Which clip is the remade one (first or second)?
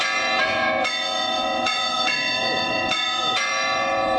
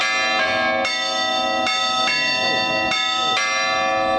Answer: first